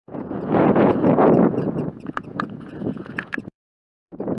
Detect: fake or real fake